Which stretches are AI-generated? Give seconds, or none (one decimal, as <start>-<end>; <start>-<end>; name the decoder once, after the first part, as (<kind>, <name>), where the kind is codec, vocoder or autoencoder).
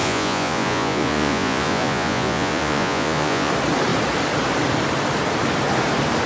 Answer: 0.0-3.5 (vocoder, Vocos)